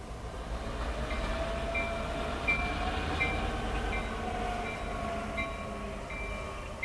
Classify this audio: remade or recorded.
recorded